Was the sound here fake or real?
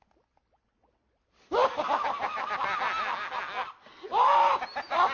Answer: real